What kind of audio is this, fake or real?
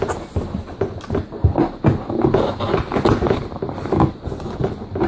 real